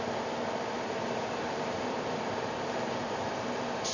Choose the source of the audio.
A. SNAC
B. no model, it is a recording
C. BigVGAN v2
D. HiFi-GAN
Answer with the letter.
C